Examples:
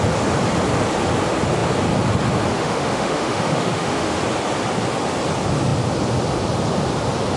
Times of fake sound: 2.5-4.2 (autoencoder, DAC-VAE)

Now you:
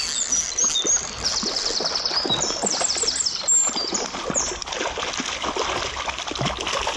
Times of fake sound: none

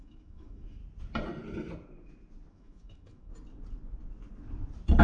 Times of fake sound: 0.0-0.8 (autoencoder, DAC-VAE); 2.5-3.3

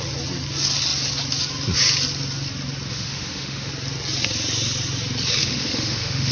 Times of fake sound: 2.9-3.7 (autoencoder, DAC-VAE); 5.4-6.3

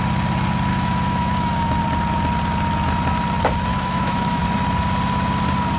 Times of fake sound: 0.7-1.8 (autoencoder, DAC-VAE); 3.7-4.4

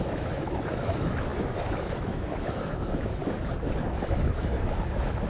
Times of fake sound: 0.0-3.2 (autoencoder, DAC-VAE); 3.8-5.3